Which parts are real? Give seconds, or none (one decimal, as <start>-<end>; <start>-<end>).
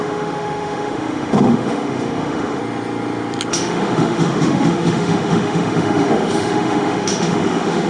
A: 2.6-3.5